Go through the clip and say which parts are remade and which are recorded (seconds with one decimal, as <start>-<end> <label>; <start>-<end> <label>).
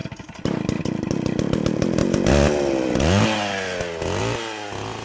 0.0-5.0 recorded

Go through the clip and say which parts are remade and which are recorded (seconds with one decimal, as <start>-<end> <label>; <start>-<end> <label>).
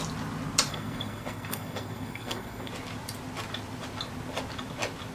0.0-0.7 recorded; 0.7-2.7 remade; 2.7-5.1 recorded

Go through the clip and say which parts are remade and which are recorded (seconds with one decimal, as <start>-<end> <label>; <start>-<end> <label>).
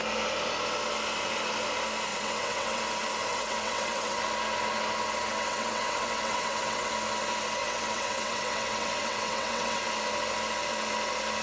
0.0-2.1 recorded; 2.1-2.8 remade; 2.8-3.3 recorded; 3.3-4.2 remade; 4.2-5.3 recorded; 5.3-6.9 remade; 6.9-7.6 recorded; 7.6-9.8 remade; 9.8-11.4 recorded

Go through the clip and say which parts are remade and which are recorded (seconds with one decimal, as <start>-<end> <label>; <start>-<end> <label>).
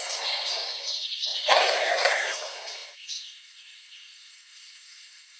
0.0-5.4 remade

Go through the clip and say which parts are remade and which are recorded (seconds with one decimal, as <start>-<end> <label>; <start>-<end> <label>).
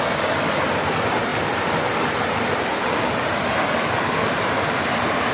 0.0-5.3 recorded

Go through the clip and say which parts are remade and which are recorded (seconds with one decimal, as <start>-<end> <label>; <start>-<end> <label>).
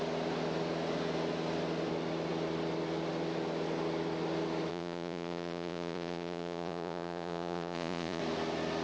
0.0-4.7 recorded; 4.7-8.2 remade; 8.2-8.8 recorded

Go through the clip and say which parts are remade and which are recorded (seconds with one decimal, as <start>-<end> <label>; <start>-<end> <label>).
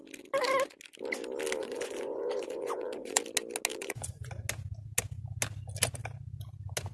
0.0-1.6 recorded; 1.6-3.2 remade; 3.2-3.7 recorded; 3.7-4.3 remade; 4.3-6.9 recorded